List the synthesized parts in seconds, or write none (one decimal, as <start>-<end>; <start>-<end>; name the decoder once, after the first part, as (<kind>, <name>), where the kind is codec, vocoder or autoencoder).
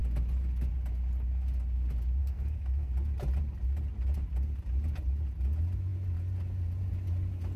2.2-2.9 (codec, SNAC)